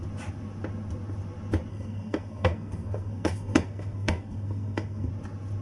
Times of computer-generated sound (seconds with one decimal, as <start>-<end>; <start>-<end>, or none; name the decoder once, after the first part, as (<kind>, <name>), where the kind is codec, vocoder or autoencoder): 1.7-5.1 (codec, SNAC)